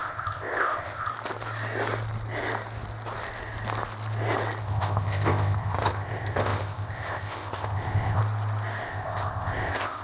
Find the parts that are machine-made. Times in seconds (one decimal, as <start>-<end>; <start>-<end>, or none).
0.0-1.1; 4.6-8.2; 8.8-10.0

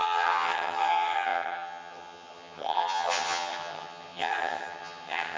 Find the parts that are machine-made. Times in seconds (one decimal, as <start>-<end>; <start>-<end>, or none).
0.0-5.4